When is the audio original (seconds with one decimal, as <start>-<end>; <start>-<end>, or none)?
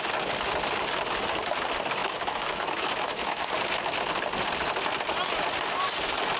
0.0-2.0; 3.5-6.4